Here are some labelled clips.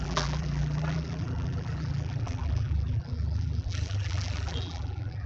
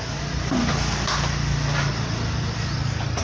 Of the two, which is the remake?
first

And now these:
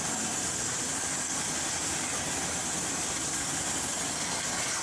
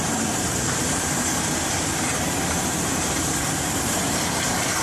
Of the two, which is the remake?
second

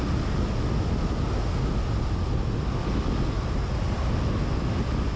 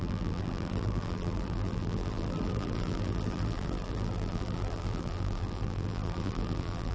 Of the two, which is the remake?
second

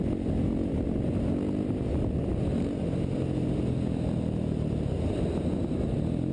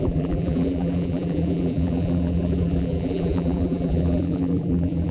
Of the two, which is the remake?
second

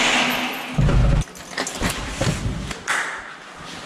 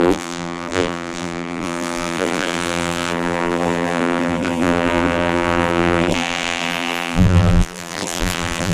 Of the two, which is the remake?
second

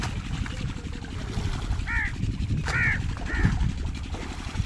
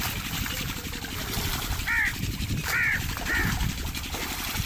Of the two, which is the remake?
second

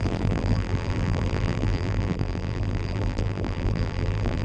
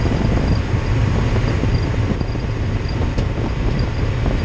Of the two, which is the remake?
first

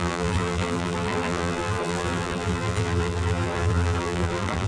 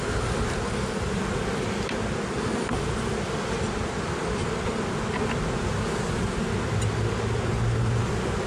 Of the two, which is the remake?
first